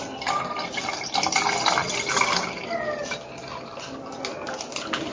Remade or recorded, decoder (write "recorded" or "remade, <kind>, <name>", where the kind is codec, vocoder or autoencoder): recorded